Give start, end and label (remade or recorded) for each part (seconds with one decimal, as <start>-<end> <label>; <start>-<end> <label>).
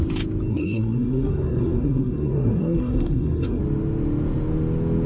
0.0-0.5 recorded; 0.5-3.6 remade; 3.6-5.1 recorded